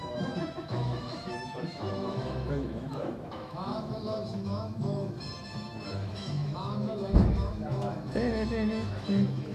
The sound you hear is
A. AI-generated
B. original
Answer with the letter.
A